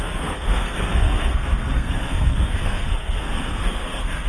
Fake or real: fake